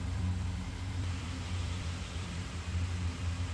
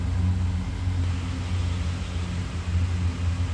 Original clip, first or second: second